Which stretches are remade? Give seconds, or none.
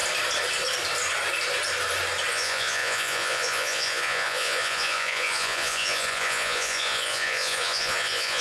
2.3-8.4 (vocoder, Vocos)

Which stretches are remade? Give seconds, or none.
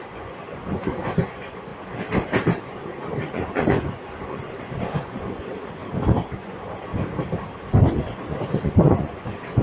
0.0-1.7 (vocoder, Vocos); 2.6-5.8; 6.4-6.9; 8.0-9.6